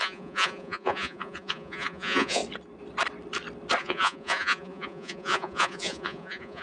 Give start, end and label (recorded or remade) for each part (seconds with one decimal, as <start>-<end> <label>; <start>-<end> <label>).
0.0-2.4 remade; 2.4-3.8 recorded; 3.8-6.6 remade